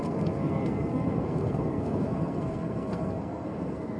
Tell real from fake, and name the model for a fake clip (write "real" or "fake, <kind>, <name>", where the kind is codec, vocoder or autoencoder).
fake, codec, SNAC